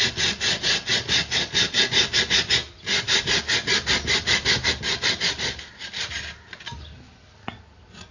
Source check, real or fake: real